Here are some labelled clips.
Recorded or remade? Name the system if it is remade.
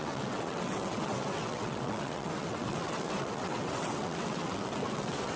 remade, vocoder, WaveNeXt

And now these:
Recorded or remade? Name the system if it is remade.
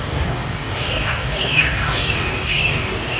remade, codec, DAC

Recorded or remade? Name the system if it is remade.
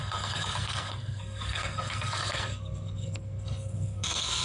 remade, codec, SNAC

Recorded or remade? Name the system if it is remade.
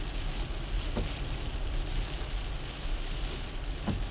recorded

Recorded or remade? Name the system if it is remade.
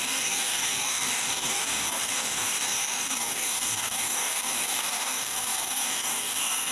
remade, codec, DAC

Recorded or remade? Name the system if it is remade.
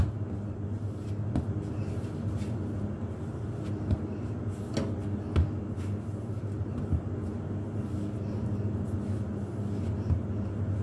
recorded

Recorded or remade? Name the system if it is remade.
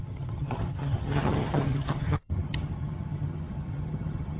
remade, vocoder, HiFi-GAN